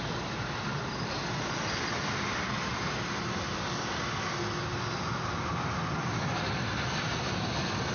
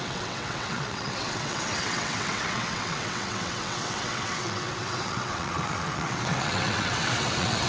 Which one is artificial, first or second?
second